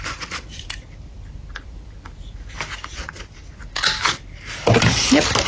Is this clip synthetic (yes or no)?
no